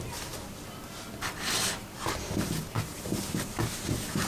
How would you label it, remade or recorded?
recorded